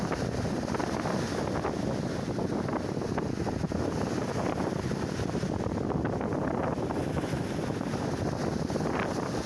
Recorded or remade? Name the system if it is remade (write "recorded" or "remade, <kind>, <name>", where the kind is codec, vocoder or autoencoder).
recorded